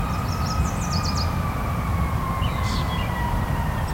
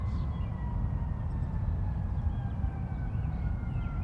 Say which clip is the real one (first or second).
second